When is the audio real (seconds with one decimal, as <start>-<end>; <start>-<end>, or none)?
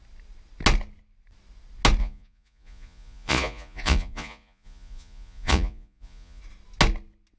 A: 0.0-2.0; 6.4-7.4